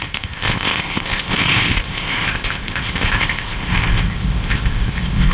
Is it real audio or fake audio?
fake